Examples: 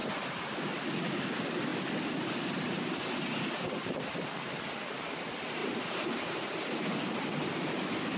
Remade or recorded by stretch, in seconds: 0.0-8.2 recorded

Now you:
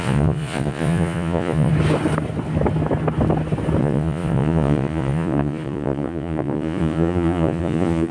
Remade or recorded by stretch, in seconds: 0.0-1.7 remade; 1.7-3.8 recorded; 3.8-8.1 remade

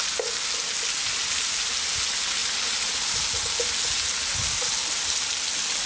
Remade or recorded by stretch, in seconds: 0.0-5.9 recorded